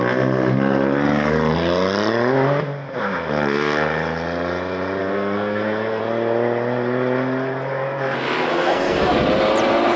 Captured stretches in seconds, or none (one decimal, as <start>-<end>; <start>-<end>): 0.0-5.0; 6.0-8.5; 9.1-10.0